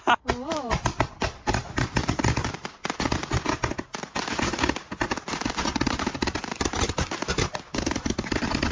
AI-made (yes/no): no